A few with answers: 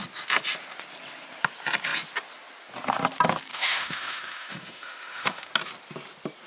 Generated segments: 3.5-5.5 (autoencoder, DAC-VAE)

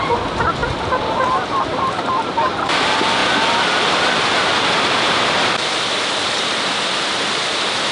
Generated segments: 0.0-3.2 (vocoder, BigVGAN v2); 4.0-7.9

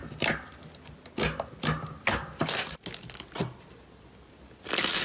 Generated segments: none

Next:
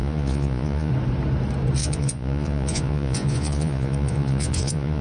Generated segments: 0.0-0.9 (vocoder, Vocos); 1.8-5.0

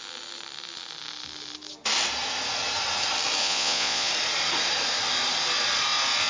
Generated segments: 3.4-4.1 (vocoder, Vocos)

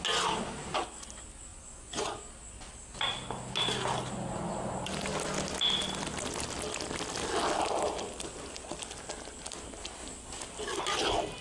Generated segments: 1.5-2.3 (vocoder, Vocos)

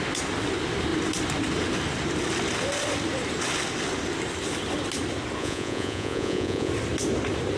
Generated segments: 5.4-6.7 (vocoder, Vocos)

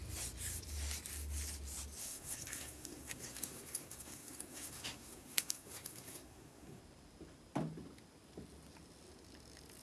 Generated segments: 2.0-6.8 (codec, SNAC)